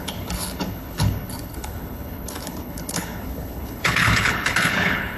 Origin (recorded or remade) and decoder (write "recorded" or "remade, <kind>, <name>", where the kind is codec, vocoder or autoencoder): remade, codec, HILCodec